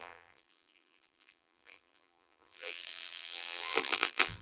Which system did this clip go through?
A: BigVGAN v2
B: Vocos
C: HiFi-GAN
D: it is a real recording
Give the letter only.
A